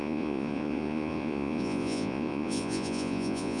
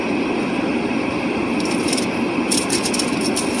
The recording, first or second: second